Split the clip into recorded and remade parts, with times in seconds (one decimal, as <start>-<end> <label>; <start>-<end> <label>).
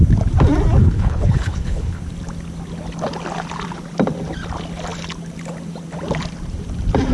0.0-0.8 recorded; 0.8-2.0 remade; 2.0-7.1 recorded